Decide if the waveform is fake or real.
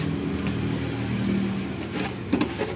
real